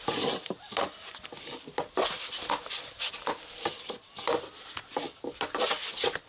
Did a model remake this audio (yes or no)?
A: no